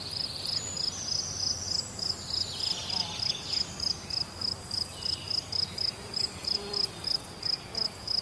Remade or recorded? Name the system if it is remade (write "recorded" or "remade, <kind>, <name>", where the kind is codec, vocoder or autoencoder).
recorded